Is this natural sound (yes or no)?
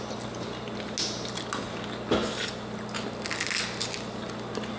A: yes